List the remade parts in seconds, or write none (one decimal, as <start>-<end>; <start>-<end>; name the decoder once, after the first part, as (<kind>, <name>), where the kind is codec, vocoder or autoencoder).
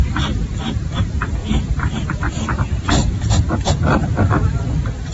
1.4-3.2 (vocoder, BigVGAN v2); 4.0-4.6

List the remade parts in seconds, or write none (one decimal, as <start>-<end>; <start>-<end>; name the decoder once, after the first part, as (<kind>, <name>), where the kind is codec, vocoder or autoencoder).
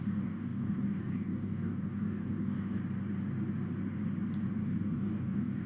0.0-2.8 (codec, DAC); 4.6-5.7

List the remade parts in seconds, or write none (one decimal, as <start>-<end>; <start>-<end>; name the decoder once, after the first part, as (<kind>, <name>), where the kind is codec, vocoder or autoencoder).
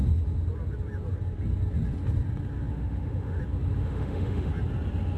2.7-3.4 (autoencoder, DAC-VAE); 3.8-4.5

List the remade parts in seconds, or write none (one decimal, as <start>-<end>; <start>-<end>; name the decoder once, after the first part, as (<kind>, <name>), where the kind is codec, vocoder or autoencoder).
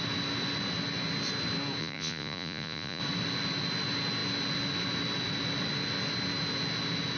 1.8-3.0 (vocoder, Vocos)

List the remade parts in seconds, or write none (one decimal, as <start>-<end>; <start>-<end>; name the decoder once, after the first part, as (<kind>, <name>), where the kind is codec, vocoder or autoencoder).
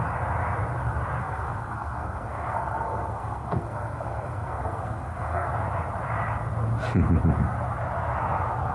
1.2-5.5 (codec, SNAC)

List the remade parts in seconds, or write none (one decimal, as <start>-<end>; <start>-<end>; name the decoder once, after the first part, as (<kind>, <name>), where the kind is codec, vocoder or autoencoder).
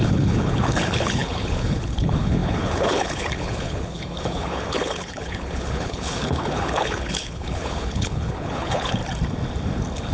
0.0-9.0 (codec, HILCodec)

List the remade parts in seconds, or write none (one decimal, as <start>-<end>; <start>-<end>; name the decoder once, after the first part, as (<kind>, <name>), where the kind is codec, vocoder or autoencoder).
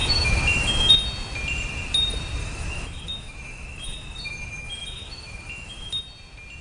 0.0-0.9 (autoencoder, DAC-VAE); 2.4-6.0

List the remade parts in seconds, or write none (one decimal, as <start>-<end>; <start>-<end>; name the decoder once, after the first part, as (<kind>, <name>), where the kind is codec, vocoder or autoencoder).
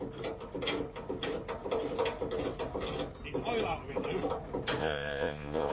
4.8-5.7 (vocoder, Vocos)